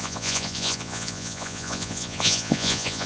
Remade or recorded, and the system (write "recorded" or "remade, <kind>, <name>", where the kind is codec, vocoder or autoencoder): remade, vocoder, Vocos